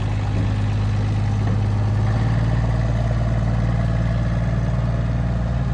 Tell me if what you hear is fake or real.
real